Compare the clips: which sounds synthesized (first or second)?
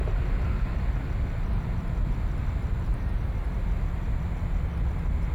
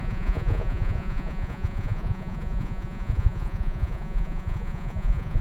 second